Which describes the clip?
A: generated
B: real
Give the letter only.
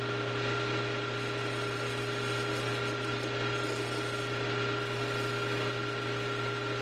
B